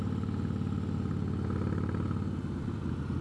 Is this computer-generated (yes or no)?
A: no